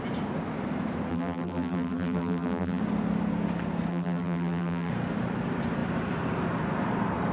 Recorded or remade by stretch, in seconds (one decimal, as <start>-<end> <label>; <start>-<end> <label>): 0.0-1.1 recorded; 1.1-2.8 remade; 2.8-3.9 recorded; 3.9-4.9 remade; 4.9-7.3 recorded